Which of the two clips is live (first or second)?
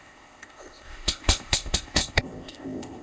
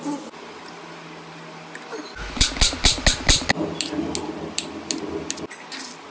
second